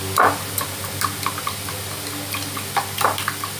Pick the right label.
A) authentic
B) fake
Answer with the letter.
A